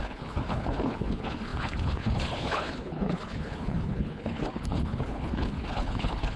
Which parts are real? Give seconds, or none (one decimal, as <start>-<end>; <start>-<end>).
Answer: none